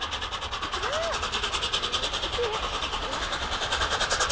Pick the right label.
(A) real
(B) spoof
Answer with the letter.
A